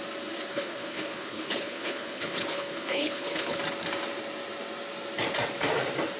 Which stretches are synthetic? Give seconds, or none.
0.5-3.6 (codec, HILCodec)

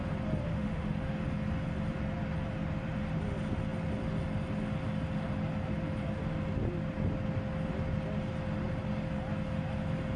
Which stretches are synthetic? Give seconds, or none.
0.5-1.1 (autoencoder, DAC-VAE)

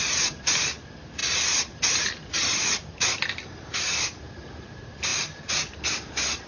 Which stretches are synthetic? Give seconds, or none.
0.0-5.1 (vocoder, BigVGAN v2); 5.9-6.5

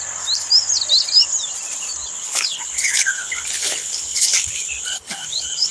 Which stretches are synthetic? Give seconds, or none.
2.0-5.7 (codec, HILCodec)

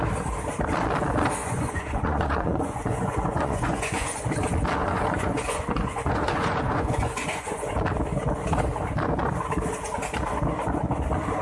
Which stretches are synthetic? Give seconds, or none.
1.4-4.2 (vocoder, Vocos); 4.8-7.7